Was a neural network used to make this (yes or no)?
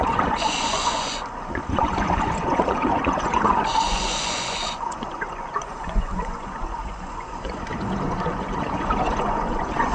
yes